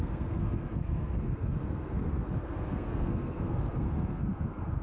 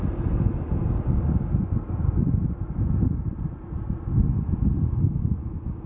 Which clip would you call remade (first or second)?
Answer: first